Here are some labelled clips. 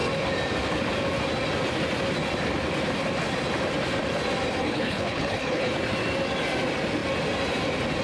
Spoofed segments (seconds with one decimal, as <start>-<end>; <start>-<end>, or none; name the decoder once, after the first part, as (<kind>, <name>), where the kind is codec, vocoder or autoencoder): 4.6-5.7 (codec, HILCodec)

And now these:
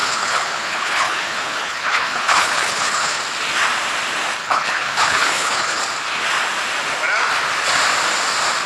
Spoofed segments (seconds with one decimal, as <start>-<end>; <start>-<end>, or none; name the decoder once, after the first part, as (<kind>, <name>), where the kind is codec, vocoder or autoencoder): 0.0-3.2 (codec, HILCodec); 4.4-5.8

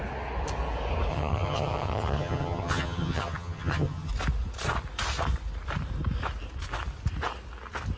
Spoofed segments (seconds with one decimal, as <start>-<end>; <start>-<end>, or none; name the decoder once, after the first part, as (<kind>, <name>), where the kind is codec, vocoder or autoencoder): 1.1-4.1 (vocoder, HiFi-GAN)

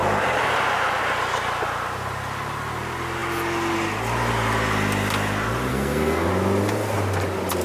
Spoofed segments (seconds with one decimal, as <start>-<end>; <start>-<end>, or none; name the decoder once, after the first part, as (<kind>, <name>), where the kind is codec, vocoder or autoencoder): 5.7-6.3 (codec, SNAC)

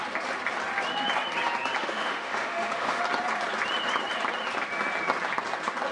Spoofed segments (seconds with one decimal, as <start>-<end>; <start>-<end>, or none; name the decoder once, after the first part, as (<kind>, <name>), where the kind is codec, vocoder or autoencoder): 1.8-3.0 (autoencoder, DAC-VAE)

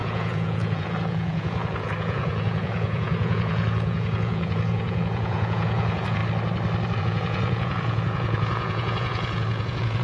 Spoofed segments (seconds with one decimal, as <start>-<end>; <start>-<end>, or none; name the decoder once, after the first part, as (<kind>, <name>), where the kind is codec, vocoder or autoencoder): 0.0-6.2 (vocoder, Vocos); 7.0-10.0

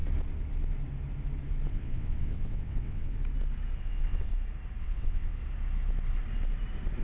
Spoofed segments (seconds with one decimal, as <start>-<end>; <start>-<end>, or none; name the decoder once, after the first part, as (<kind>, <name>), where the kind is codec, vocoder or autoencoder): 1.7-3.2 (vocoder, WaveNeXt); 3.8-4.3; 4.8-5.4